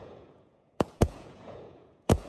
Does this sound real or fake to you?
fake